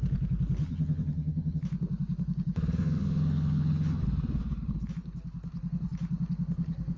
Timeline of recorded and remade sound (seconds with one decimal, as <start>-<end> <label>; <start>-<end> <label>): 0.0-0.6 recorded; 0.6-1.6 remade; 1.6-2.8 recorded; 2.8-4.0 remade; 4.0-7.0 recorded